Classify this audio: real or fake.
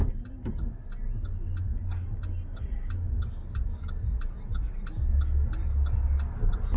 real